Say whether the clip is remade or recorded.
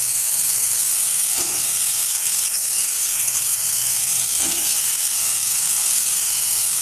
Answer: remade